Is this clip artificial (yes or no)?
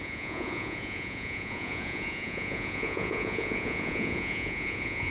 yes